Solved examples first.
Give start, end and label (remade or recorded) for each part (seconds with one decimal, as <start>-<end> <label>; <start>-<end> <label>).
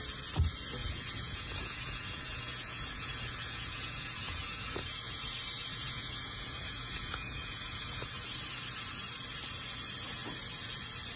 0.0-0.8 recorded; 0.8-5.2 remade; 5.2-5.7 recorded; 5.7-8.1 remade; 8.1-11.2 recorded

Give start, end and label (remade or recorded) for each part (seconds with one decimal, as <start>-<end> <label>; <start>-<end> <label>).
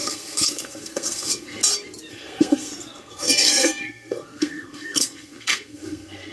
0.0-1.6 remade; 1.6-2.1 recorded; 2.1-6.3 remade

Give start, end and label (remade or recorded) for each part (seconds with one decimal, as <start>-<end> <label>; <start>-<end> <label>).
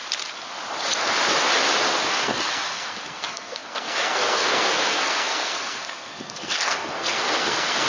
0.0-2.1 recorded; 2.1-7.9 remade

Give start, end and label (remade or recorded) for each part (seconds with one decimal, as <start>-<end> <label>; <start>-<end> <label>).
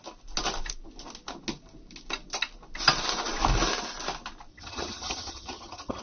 0.0-4.5 recorded; 4.5-6.0 remade